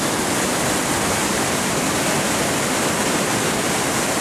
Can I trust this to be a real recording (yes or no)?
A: yes